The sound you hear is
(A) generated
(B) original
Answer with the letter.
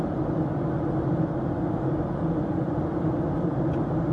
B